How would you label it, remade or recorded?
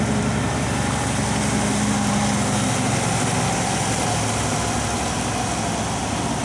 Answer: recorded